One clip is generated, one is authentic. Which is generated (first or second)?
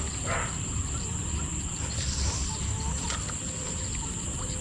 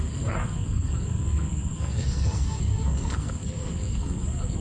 second